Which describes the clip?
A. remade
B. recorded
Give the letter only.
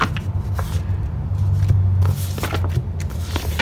B